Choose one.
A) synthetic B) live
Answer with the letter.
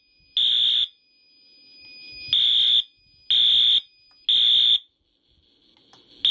B